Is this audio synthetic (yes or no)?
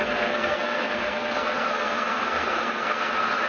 yes